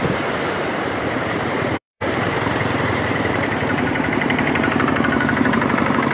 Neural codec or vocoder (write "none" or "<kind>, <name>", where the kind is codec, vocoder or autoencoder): vocoder, BigVGAN v2